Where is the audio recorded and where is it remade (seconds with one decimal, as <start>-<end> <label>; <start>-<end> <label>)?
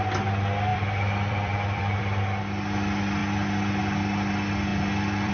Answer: 0.0-0.7 recorded; 0.7-2.0 remade; 2.0-4.7 recorded; 4.7-5.3 remade